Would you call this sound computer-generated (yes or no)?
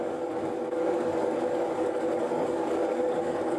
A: yes